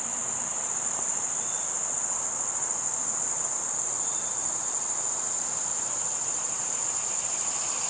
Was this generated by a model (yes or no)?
yes